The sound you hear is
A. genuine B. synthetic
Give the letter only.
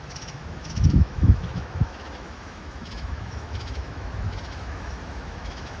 B